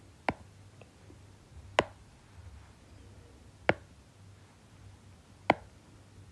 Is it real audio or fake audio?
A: real